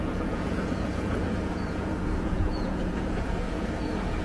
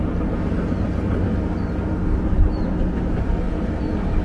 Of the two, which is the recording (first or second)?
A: second